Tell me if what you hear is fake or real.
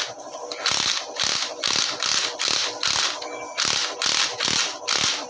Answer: real